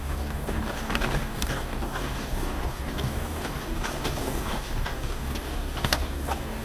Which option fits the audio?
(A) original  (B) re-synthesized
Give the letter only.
B